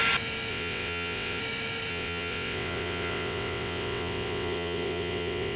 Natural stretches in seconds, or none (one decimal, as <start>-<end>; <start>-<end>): 0.0-0.5; 1.4-1.9